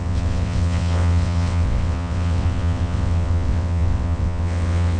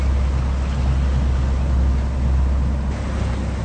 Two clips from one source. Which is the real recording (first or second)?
second